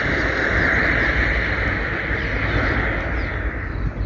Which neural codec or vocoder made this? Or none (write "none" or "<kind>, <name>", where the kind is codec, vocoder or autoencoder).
none